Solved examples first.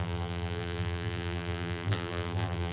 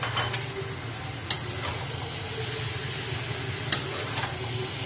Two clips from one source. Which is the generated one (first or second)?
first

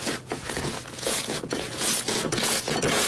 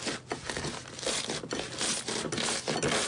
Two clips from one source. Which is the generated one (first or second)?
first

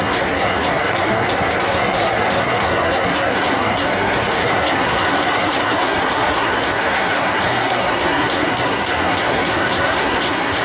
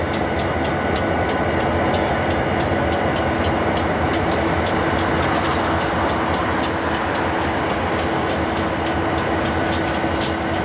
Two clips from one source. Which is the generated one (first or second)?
first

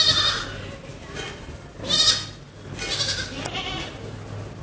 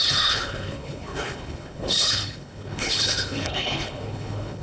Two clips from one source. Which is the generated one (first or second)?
second